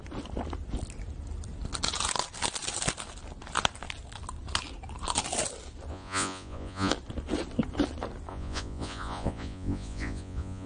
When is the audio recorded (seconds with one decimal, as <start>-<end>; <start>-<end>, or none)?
0.0-5.9; 6.9-8.3

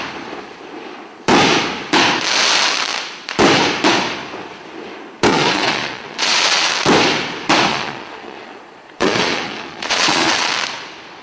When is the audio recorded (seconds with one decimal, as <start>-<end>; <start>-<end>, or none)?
0.0-5.3; 6.7-7.7; 10.5-11.2

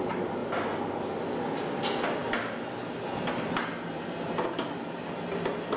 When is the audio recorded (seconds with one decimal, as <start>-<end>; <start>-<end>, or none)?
0.0-5.8

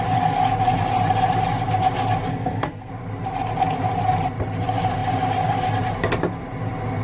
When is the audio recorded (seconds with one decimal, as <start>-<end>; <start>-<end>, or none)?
0.0-2.3; 2.9-7.0

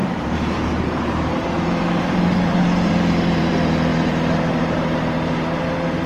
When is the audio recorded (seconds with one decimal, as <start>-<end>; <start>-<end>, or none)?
3.5-3.9; 5.0-6.1

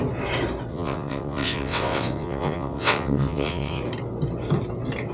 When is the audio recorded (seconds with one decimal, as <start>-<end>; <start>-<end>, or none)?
0.0-0.7; 3.8-5.1

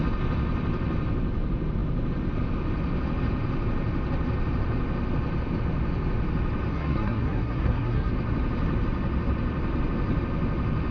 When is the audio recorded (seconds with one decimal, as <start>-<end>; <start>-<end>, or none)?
0.0-6.7; 8.1-10.9

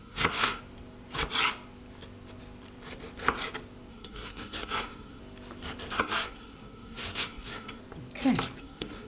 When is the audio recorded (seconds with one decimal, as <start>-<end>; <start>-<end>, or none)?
0.6-3.9; 5.2-5.9; 7.8-8.6